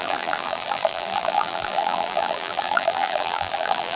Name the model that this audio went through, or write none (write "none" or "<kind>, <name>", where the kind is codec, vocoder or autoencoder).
vocoder, BigVGAN v2